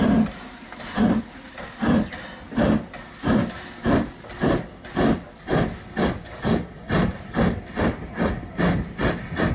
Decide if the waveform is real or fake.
real